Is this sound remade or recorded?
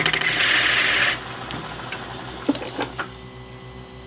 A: recorded